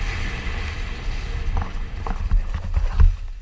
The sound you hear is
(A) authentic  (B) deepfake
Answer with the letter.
A